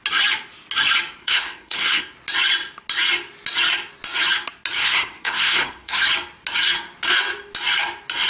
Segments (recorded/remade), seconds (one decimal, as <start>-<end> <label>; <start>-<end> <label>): 0.0-1.2 recorded; 1.2-2.0 remade; 2.0-4.8 recorded; 4.8-6.0 remade; 6.0-8.3 recorded